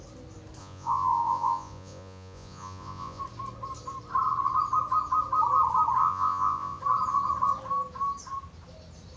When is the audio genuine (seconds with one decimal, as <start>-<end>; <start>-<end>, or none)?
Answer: 0.0-0.6; 3.2-6.0; 6.8-9.2